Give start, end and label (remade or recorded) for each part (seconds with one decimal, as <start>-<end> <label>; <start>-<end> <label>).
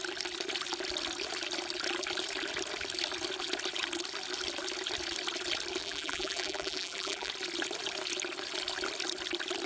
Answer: 0.0-5.8 recorded; 5.8-7.3 remade; 7.3-9.7 recorded